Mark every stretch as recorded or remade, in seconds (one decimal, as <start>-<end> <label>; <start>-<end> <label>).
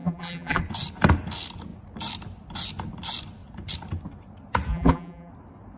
0.0-0.6 remade; 0.6-4.7 recorded; 4.7-5.3 remade; 5.3-5.8 recorded